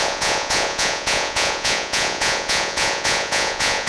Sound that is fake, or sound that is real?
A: fake